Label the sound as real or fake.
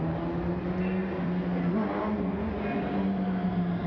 real